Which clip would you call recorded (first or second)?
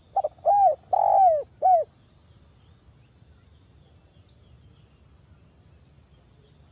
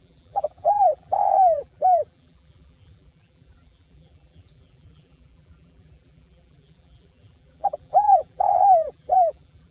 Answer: first